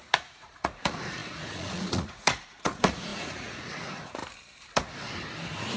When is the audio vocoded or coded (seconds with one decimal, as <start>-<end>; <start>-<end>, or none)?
0.0-4.2